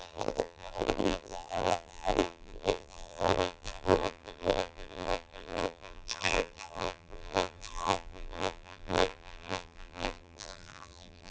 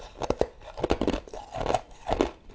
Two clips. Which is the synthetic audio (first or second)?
first